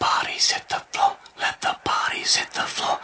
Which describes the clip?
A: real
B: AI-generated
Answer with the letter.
A